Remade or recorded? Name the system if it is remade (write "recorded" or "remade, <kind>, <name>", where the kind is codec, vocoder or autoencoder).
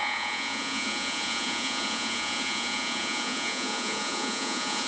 remade, vocoder, Vocos